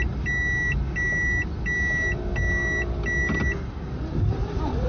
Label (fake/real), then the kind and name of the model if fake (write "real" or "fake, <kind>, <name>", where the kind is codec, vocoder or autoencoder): real